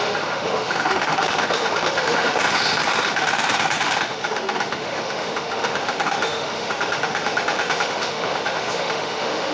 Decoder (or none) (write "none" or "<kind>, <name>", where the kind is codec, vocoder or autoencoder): autoencoder, DAC-VAE